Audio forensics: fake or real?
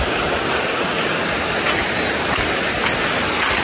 real